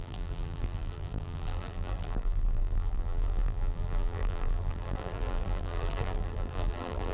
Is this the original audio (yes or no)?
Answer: no